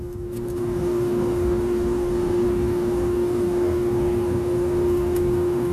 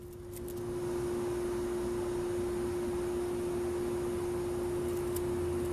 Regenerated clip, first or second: first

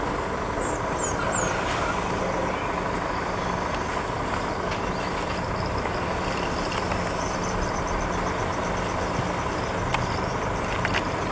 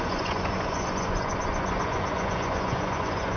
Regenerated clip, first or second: second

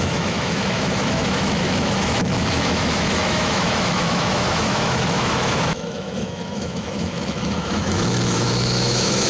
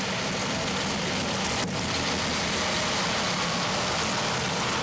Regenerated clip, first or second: first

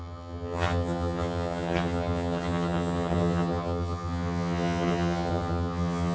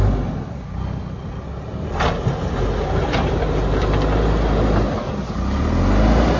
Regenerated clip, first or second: first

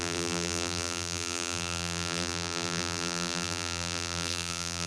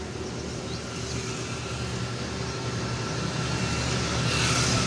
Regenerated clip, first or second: first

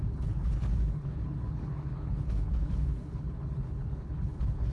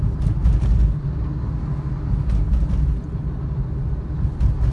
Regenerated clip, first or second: first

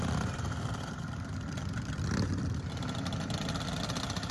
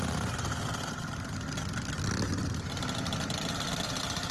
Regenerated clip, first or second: first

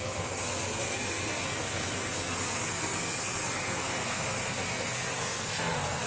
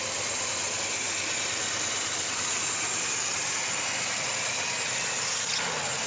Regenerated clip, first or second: first